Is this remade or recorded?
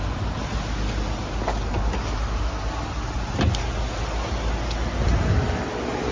recorded